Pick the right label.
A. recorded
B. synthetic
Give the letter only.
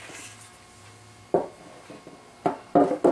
A